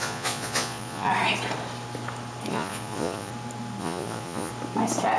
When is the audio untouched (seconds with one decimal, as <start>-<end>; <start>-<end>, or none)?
1.1-2.5; 3.3-3.8; 4.5-5.2